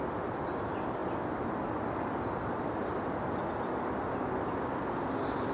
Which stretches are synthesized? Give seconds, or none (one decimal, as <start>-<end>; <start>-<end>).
none